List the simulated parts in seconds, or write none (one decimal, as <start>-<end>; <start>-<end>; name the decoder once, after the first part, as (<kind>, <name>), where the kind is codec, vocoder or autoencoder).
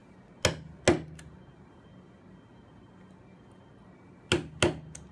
none